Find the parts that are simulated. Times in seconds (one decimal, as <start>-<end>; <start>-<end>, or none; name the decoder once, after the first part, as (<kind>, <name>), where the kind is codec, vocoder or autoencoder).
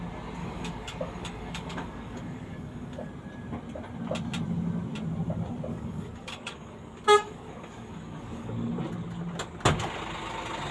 0.4-3.1 (codec, DAC); 5.7-8.7